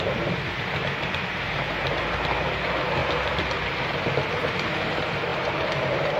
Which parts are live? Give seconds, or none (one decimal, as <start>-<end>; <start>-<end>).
3.0-4.3